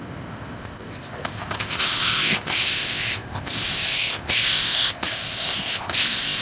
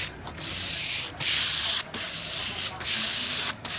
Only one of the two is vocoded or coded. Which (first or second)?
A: first